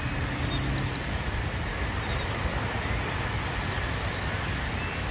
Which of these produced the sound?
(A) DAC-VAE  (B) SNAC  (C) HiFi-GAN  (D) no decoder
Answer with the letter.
D